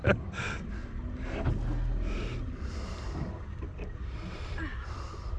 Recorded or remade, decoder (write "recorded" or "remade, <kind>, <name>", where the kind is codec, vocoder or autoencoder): recorded